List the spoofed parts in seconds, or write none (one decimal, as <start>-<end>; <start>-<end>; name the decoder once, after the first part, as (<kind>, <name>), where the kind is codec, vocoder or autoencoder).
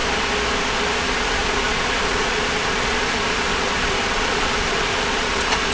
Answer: 1.0-5.7 (vocoder, Vocos)